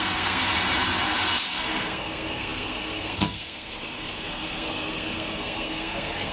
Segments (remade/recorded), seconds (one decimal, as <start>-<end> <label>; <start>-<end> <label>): 0.0-0.5 remade; 0.5-1.5 recorded; 1.5-6.3 remade